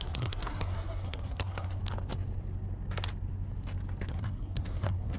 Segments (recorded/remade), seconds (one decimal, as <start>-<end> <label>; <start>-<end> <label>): 0.0-1.8 remade; 1.8-4.1 recorded; 4.1-5.2 remade